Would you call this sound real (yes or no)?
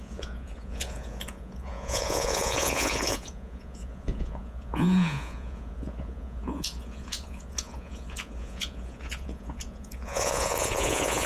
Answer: no